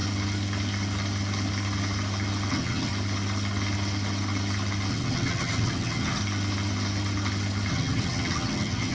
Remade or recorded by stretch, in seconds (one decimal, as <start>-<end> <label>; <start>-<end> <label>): 0.0-2.5 recorded; 2.5-2.9 remade; 2.9-4.9 recorded; 4.9-6.2 remade; 6.2-7.7 recorded; 7.7-8.9 remade